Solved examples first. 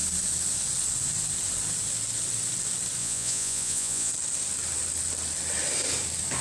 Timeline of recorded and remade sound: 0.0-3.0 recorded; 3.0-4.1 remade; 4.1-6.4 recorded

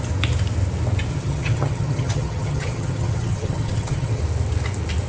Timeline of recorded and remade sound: 0.0-1.1 recorded; 1.1-4.2 remade; 4.2-5.1 recorded